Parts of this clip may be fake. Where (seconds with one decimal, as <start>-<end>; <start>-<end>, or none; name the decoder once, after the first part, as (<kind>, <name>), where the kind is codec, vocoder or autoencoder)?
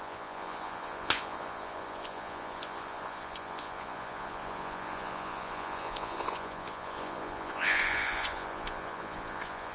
0.0-9.7 (vocoder, Vocos)